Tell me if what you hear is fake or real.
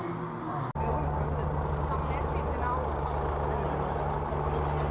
real